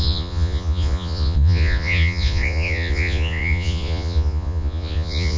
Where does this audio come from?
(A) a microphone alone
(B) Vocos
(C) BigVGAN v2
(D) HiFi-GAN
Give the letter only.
B